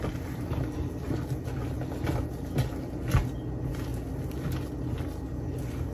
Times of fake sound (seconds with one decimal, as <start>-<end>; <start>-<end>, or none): none